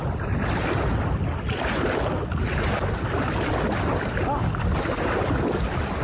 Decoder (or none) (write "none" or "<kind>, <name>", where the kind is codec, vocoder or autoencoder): none